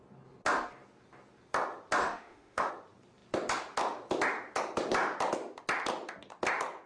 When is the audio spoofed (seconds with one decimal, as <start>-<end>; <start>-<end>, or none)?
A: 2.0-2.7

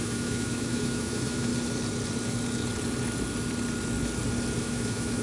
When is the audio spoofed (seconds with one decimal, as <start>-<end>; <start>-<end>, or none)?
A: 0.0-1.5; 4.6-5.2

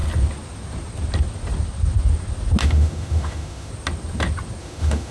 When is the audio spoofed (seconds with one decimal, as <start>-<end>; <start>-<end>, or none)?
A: 2.6-3.7; 4.6-5.1

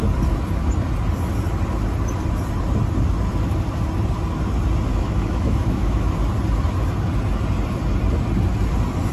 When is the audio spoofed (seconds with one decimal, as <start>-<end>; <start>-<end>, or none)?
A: 4.9-6.1

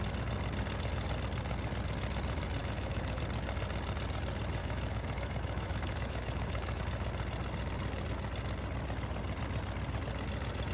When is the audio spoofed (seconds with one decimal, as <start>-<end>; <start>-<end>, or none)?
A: 2.6-3.2; 4.6-6.8

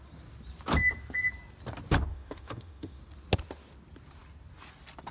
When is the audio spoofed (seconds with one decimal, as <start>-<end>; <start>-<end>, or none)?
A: 2.1-3.0